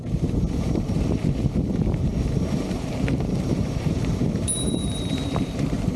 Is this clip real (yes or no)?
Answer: no